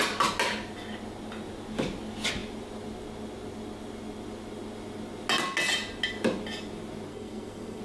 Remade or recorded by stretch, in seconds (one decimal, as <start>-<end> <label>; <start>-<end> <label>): 0.0-7.1 recorded; 7.1-7.8 remade